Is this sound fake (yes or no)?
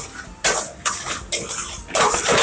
no